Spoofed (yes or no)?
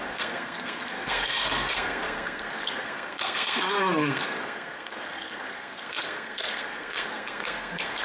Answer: yes